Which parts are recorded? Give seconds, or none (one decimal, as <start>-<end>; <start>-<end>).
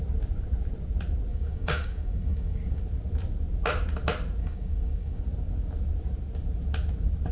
0.0-1.3; 2.8-4.4; 5.2-7.3